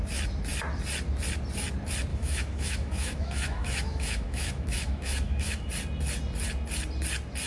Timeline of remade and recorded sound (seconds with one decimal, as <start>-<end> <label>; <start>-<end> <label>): 0.0-2.1 recorded; 2.1-5.7 remade; 5.7-7.5 recorded